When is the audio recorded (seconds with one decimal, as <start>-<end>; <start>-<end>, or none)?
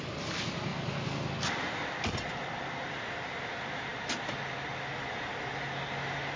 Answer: 0.0-6.4